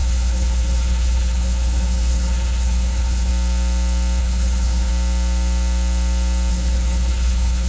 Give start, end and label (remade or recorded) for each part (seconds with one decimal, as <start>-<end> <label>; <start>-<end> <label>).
0.0-3.3 remade; 3.3-4.2 recorded; 4.2-4.9 remade; 4.9-6.5 recorded; 6.5-7.7 remade